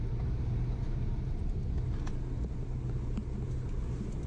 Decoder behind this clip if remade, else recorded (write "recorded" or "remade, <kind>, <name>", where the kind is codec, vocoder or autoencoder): recorded